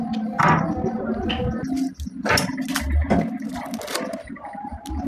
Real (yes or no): yes